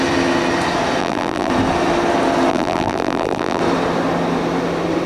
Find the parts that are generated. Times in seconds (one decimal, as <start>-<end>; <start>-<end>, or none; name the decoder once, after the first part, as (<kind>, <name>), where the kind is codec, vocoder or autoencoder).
1.0-1.5 (vocoder, BigVGAN v2); 2.5-3.6